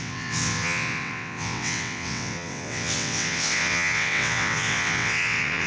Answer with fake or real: fake